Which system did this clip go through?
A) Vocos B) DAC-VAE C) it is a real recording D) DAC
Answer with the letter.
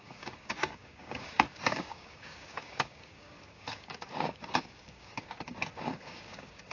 D